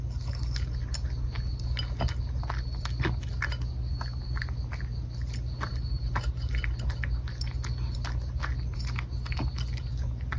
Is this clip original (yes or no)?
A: yes